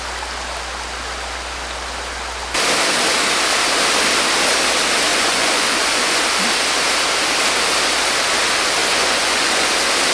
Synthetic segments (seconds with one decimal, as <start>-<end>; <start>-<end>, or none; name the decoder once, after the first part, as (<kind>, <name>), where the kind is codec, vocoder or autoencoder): 5.1-6.2 (vocoder, Vocos); 8.8-9.7